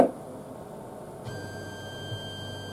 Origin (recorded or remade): recorded